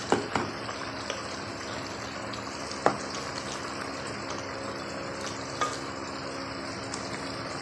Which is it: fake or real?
real